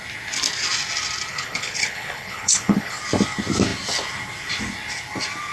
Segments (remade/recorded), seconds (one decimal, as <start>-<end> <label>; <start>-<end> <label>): 0.0-1.3 recorded; 1.3-3.0 remade; 3.0-5.5 recorded